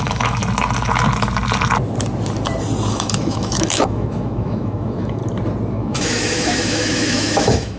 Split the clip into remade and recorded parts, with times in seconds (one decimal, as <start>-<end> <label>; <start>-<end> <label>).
0.0-0.4 remade; 0.4-2.9 recorded; 2.9-5.2 remade; 5.2-5.7 recorded; 5.7-7.8 remade